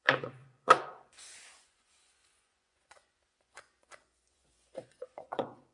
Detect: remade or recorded remade